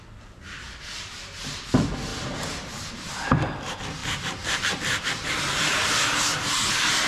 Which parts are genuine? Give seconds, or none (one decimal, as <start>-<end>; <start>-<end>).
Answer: 0.0-2.1; 2.9-4.0